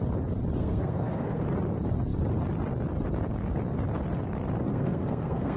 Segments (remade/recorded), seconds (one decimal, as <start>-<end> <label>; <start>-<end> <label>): 0.0-0.6 recorded; 0.6-1.4 remade; 1.4-4.7 recorded; 4.7-5.6 remade